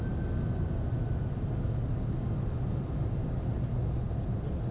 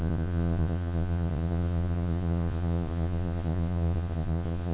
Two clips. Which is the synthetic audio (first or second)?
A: second